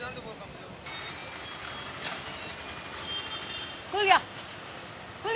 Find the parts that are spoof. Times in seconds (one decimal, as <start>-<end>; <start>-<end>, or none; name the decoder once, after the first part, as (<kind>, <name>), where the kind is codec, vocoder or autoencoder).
none